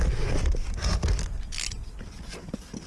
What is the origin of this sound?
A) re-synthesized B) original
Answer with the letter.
B